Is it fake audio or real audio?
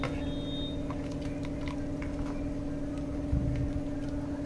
real